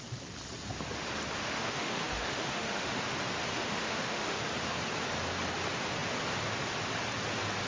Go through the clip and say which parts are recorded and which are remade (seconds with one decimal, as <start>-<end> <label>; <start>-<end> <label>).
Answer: 0.0-1.4 recorded; 1.4-2.9 remade; 2.9-3.5 recorded; 3.5-4.4 remade; 4.4-7.7 recorded